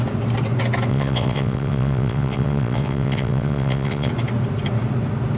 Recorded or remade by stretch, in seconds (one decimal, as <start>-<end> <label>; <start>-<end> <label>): 0.0-0.9 recorded; 0.9-4.1 remade; 4.1-5.4 recorded